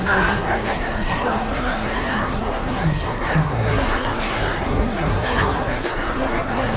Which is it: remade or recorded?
remade